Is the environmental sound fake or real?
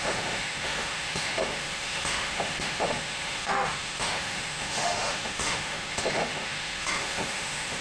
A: fake